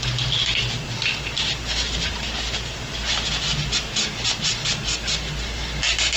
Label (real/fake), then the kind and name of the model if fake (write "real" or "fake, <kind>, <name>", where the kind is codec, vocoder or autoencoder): real